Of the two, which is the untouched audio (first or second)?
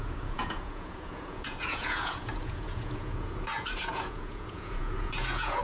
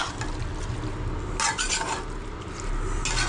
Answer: second